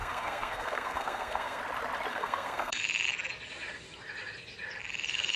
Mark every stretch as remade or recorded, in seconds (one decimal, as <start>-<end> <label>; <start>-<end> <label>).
0.0-1.6 remade; 1.6-2.1 recorded; 2.1-2.8 remade; 2.8-5.4 recorded